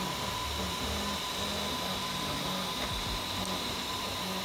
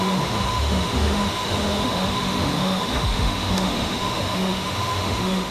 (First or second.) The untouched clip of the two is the first